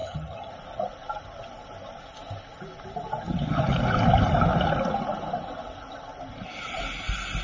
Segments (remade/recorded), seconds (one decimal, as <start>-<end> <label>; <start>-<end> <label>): 0.0-0.5 remade; 0.5-7.4 recorded